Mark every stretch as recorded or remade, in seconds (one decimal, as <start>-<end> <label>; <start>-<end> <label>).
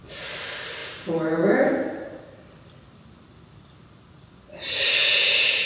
0.0-0.8 recorded; 0.8-1.7 remade; 1.7-5.0 recorded; 5.0-5.7 remade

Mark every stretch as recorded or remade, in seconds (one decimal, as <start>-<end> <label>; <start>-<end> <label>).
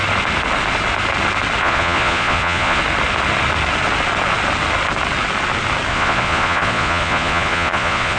0.0-1.6 recorded; 1.6-2.8 remade; 2.8-5.9 recorded; 5.9-8.2 remade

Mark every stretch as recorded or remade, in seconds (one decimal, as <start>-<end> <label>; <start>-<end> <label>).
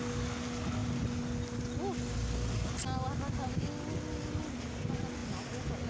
0.0-5.9 recorded